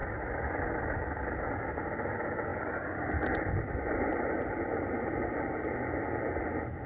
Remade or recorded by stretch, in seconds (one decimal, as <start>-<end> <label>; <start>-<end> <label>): 0.0-6.9 recorded